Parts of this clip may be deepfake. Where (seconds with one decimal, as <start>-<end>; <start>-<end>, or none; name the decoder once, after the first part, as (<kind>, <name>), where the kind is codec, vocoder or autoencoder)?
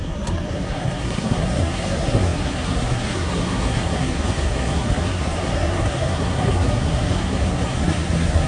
0.0-8.5 (codec, SNAC)